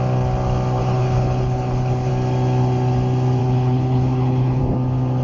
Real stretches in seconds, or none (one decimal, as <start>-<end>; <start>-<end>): 0.0-0.8; 2.1-3.4; 4.6-5.2